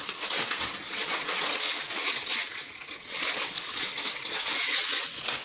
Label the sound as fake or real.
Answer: fake